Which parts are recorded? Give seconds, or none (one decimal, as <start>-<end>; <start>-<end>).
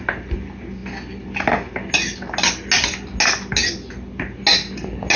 0.0-5.2